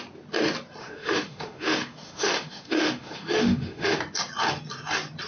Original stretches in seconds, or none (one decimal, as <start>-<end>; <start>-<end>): 0.0-0.8; 4.0-5.3